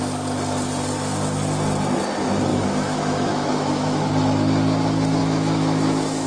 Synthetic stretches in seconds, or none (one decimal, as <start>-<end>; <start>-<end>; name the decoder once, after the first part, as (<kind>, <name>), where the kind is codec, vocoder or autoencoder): 2.5-4.1 (autoencoder, DAC-VAE); 5.2-6.3